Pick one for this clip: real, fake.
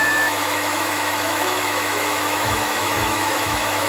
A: fake